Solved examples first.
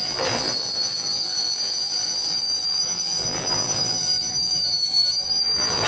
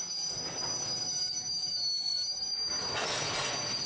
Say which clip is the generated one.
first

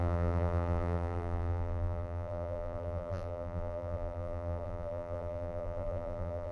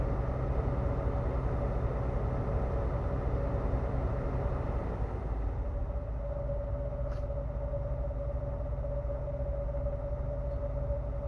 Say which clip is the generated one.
first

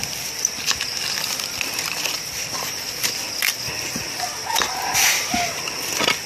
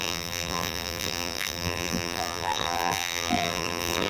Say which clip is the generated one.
second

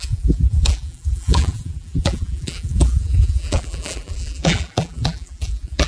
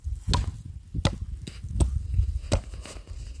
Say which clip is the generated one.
first